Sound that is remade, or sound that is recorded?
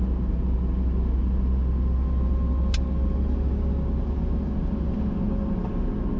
recorded